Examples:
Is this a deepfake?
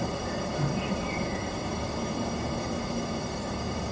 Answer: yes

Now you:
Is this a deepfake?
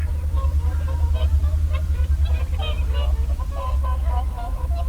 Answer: no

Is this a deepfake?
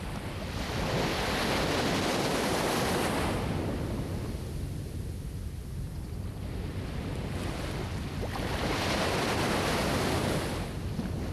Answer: no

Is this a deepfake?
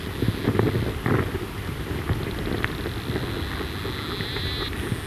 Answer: no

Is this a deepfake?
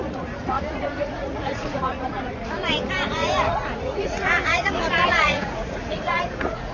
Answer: yes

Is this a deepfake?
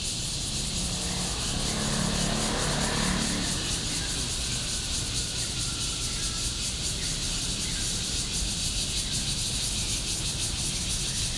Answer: no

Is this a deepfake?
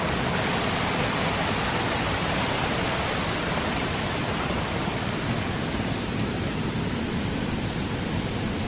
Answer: no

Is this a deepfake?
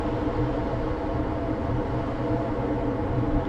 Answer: no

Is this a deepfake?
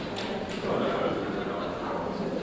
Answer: no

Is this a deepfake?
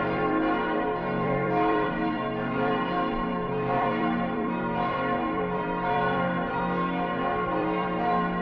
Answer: yes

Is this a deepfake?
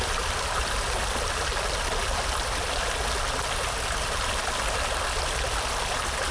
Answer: no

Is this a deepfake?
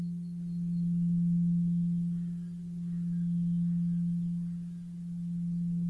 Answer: no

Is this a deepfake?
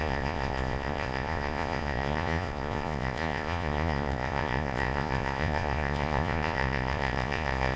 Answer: yes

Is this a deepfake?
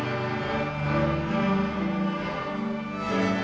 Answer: no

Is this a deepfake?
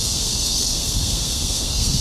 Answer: yes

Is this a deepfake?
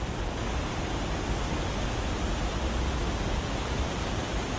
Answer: no